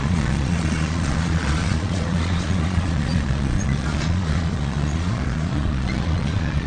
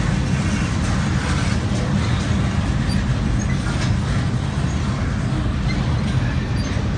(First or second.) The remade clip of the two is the first